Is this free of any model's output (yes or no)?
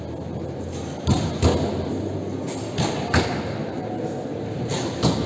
yes